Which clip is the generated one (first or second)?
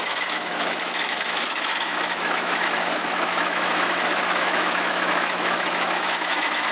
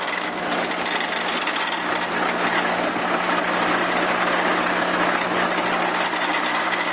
first